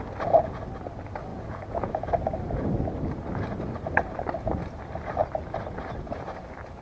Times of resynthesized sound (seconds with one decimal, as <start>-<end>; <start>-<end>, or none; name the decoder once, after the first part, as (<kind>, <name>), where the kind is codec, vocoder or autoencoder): 1.3-1.9 (vocoder, Vocos)

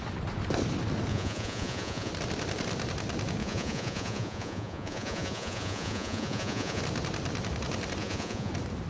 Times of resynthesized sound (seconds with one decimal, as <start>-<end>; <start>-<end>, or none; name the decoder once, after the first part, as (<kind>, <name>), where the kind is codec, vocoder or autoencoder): 1.1-2.1 (vocoder, Vocos); 3.4-6.8; 8.0-8.5

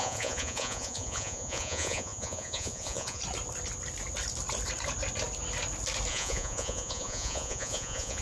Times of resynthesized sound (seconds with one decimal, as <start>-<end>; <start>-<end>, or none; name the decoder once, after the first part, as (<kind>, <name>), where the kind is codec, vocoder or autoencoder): 0.0-3.2 (vocoder, Vocos); 6.1-8.2

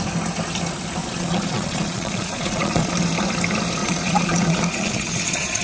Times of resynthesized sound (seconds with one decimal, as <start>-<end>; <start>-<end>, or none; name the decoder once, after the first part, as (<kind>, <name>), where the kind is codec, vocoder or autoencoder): 1.0-2.9 (vocoder, Vocos); 3.8-5.6

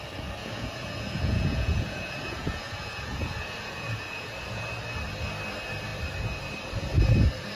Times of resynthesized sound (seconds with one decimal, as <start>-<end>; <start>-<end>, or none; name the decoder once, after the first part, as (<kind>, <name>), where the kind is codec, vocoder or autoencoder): 0.4-4.6 (vocoder, Vocos)

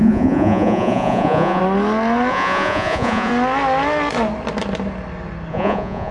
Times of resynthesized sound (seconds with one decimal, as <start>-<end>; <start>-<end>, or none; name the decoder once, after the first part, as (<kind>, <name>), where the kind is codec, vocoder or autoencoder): 0.0-1.6 (vocoder, Vocos); 2.3-3.3; 5.5-6.1

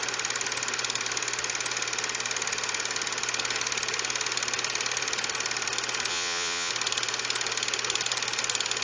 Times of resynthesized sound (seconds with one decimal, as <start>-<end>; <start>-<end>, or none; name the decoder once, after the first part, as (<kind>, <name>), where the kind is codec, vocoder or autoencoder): 6.1-6.7 (vocoder, Vocos)

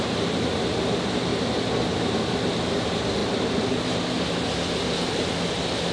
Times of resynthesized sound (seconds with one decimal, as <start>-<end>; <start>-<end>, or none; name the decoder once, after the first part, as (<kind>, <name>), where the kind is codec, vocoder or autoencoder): none